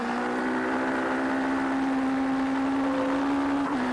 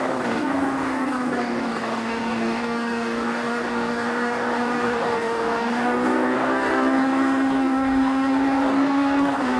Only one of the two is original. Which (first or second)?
first